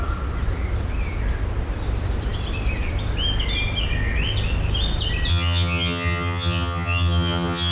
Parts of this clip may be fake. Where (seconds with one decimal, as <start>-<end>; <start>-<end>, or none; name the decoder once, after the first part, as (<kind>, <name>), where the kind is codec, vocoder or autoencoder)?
5.3-7.7 (vocoder, HiFi-GAN)